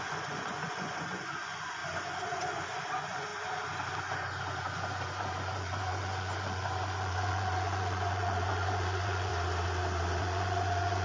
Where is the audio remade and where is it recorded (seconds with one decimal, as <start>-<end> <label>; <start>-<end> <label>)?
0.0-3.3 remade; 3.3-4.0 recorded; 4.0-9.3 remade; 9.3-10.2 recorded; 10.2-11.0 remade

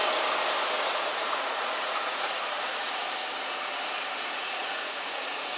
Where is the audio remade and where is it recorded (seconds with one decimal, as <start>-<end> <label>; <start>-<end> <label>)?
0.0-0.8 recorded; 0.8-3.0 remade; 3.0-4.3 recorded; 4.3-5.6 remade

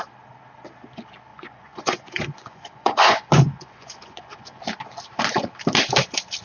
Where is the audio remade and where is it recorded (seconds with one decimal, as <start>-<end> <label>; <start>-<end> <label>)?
0.0-1.3 recorded; 1.3-4.6 remade; 4.6-6.4 recorded

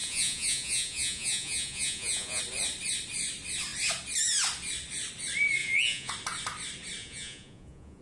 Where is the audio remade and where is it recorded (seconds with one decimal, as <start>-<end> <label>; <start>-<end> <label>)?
0.0-2.4 remade; 2.4-5.6 recorded; 5.6-6.1 remade; 6.1-7.0 recorded; 7.0-8.0 remade

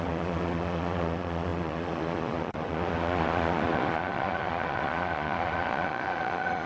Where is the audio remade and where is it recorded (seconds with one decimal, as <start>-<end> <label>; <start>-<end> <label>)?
0.0-6.7 remade

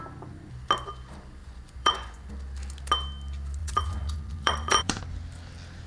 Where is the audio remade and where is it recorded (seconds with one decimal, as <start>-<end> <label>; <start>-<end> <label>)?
0.0-1.4 recorded; 1.4-2.3 remade; 2.3-3.6 recorded; 3.6-5.0 remade; 5.0-5.9 recorded